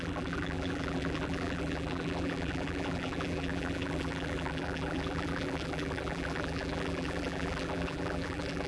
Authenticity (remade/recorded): remade